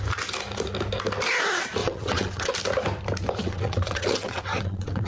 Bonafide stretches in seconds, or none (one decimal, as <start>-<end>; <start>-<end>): 0.0-1.8; 2.5-3.4